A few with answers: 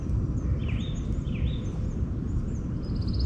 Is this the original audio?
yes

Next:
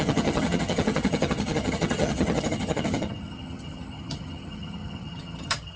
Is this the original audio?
no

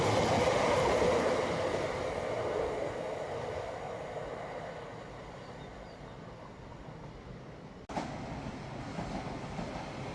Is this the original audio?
yes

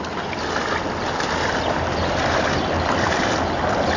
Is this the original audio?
yes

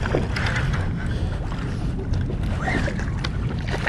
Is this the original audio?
yes